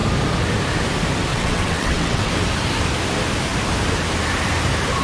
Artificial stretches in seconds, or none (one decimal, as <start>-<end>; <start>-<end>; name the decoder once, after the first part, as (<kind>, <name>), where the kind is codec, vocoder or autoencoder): 1.3-2.3 (vocoder, WaveNeXt)